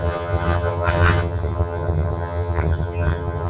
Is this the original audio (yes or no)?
no